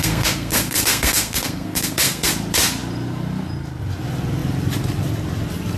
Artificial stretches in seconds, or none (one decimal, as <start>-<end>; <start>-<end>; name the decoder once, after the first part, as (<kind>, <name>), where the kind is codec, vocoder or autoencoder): 0.0-2.3 (codec, SNAC)